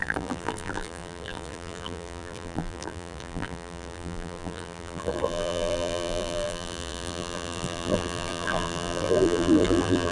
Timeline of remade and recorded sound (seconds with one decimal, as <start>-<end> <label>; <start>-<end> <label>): 0.0-10.1 remade